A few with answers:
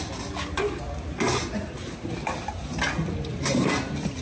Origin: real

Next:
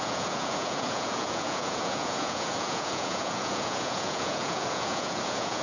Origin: fake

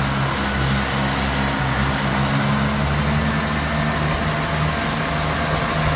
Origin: real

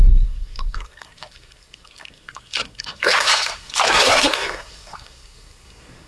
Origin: fake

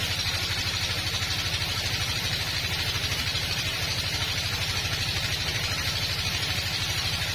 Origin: fake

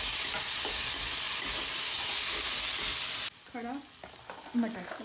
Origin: real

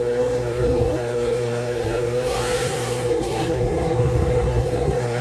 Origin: fake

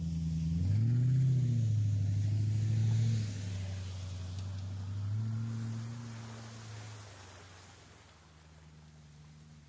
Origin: real